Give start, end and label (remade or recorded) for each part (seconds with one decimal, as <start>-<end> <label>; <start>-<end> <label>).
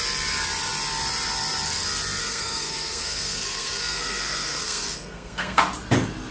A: 0.0-2.2 recorded; 2.2-5.6 remade; 5.6-6.3 recorded